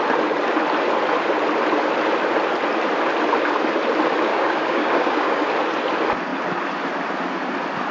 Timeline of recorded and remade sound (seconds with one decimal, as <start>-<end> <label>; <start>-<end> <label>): 0.0-4.3 recorded; 4.3-5.5 remade; 5.5-7.9 recorded